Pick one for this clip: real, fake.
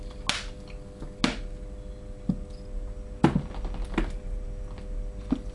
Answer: real